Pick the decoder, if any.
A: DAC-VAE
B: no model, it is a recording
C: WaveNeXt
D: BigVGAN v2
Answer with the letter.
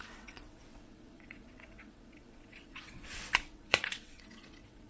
C